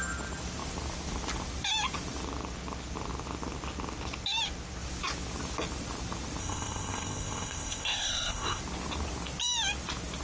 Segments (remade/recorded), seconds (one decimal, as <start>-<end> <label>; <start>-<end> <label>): 0.0-6.4 recorded; 6.4-8.6 remade; 8.6-10.2 recorded